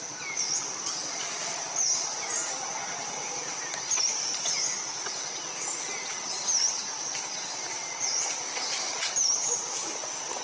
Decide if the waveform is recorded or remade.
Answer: remade